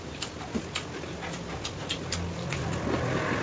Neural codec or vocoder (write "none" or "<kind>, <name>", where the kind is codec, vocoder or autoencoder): none